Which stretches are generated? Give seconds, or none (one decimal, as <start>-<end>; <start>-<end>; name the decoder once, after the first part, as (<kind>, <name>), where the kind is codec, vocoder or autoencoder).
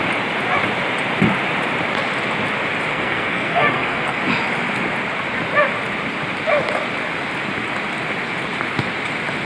2.9-4.2 (codec, SNAC)